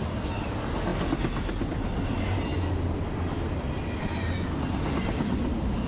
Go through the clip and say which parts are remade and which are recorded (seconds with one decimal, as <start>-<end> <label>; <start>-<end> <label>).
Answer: 0.0-5.9 recorded